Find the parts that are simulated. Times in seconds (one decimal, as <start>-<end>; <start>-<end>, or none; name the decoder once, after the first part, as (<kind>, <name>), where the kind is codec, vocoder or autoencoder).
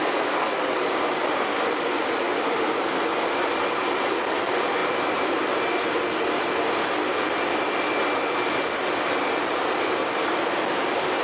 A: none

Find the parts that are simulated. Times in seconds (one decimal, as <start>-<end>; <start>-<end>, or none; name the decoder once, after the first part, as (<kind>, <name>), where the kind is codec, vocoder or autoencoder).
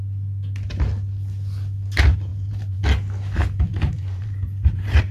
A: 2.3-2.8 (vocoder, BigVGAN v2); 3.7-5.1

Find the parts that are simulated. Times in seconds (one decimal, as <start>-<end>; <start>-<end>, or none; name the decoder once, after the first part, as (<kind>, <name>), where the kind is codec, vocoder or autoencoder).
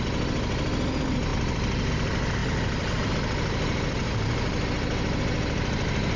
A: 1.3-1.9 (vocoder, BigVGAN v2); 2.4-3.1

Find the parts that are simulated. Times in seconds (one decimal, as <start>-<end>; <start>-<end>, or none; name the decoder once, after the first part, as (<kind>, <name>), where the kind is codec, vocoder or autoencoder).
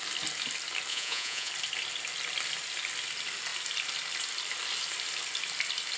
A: 0.9-1.5 (vocoder, Vocos)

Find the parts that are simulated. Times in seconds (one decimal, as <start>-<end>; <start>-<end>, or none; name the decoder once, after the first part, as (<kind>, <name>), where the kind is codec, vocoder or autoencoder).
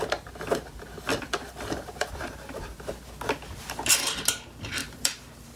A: 1.4-2.9 (vocoder, BigVGAN v2); 4.8-5.6